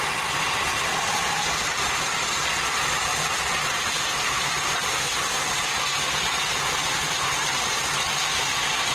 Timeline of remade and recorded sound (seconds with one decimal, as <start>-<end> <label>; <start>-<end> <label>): 0.0-0.7 recorded; 0.7-2.5 remade; 2.5-3.1 recorded; 3.1-7.9 remade; 7.9-8.9 recorded